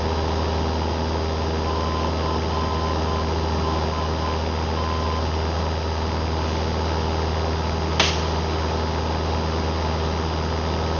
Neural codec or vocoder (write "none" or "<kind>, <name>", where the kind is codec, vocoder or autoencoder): none